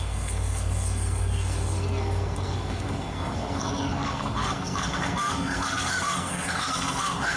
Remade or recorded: remade